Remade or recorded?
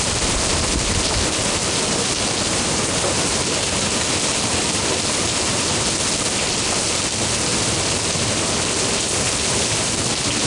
recorded